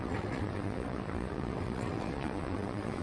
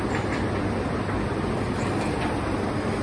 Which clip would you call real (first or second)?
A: second